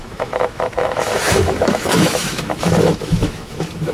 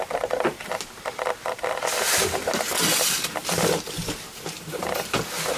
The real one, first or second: second